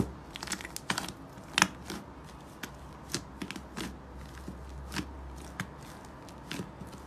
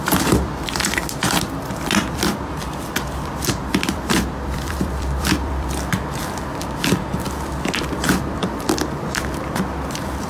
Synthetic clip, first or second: second